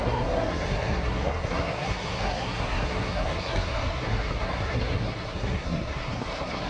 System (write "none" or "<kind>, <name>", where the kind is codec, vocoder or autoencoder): codec, SNAC